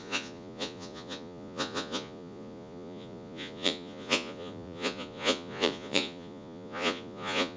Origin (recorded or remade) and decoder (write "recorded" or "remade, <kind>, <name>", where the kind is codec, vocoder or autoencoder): remade, vocoder, Vocos